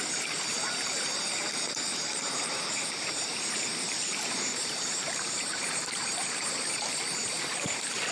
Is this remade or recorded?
remade